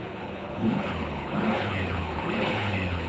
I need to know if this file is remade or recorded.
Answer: remade